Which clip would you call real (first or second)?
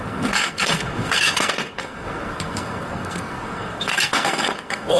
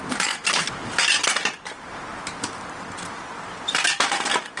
second